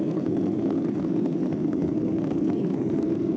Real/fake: fake